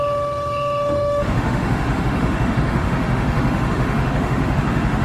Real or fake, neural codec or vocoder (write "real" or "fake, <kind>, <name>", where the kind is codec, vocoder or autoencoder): fake, autoencoder, DAC-VAE